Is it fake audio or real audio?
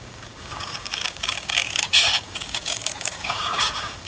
fake